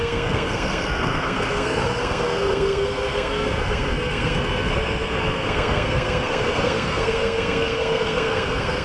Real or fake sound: fake